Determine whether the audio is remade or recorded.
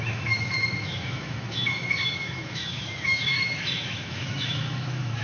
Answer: remade